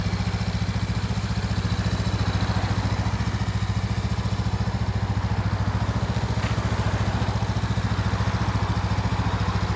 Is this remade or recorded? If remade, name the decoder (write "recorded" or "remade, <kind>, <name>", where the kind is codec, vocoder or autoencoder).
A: recorded